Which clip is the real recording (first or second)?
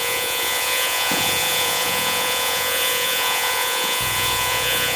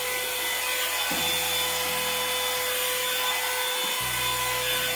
second